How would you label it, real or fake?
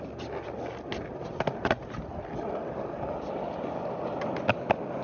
real